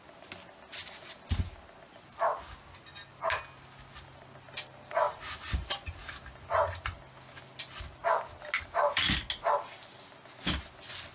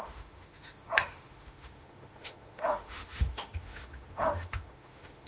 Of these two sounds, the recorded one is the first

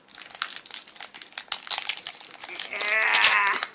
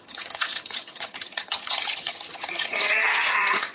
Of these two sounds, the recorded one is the first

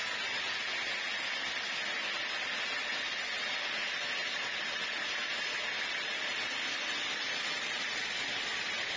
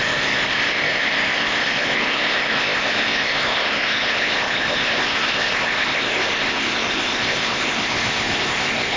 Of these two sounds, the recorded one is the first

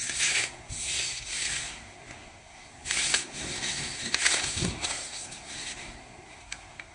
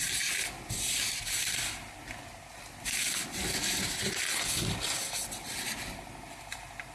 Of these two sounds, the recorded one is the second